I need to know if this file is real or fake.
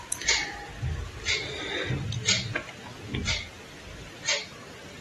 real